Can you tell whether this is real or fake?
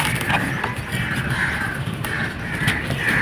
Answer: real